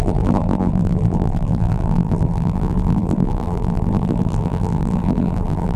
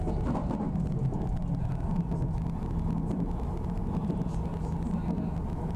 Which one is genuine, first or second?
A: second